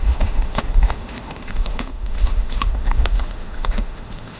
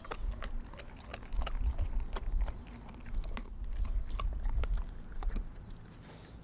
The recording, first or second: second